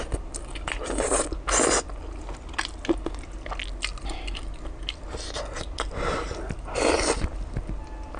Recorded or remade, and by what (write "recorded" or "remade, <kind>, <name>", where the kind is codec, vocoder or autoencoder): recorded